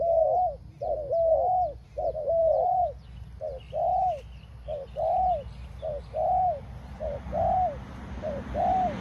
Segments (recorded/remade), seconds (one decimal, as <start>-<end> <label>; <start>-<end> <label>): 0.0-2.4 recorded; 2.4-2.9 remade; 2.9-9.0 recorded